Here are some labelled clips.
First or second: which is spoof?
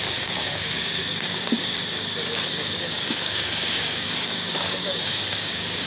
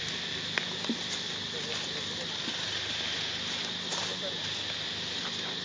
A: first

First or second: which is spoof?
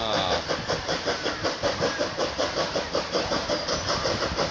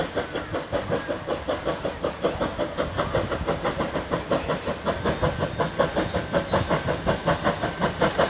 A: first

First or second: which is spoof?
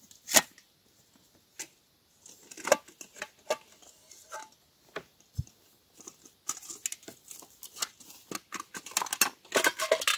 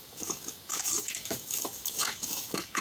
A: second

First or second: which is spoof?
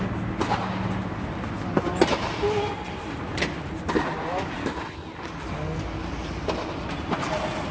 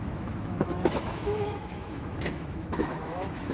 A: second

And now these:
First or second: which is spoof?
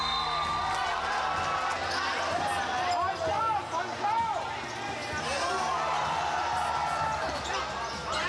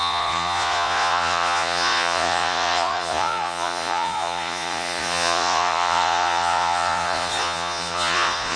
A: second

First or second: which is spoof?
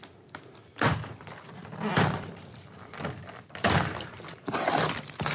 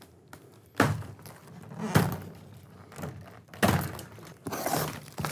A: first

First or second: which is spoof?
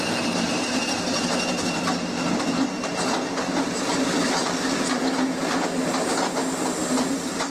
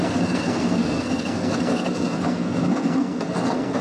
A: second